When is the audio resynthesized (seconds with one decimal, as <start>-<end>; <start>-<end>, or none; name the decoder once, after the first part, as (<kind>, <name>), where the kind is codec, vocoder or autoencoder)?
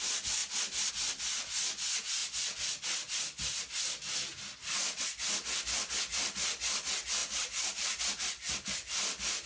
7.2-8.0 (vocoder, BigVGAN v2)